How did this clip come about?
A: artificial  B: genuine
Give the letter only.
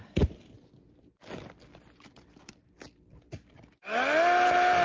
B